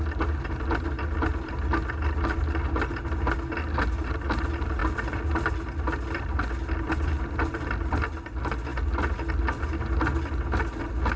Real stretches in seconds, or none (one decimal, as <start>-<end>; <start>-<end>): 0.0-11.2